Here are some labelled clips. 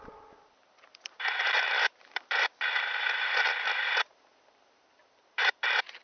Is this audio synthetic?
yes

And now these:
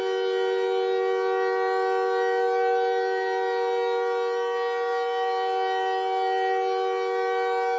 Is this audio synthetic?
no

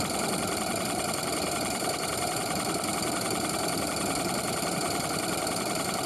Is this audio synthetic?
yes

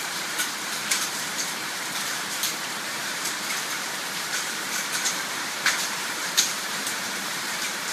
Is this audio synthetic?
yes